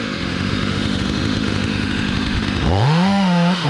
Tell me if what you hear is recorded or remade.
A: remade